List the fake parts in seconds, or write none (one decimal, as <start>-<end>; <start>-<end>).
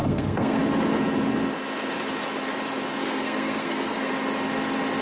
0.0-0.6; 3.0-4.1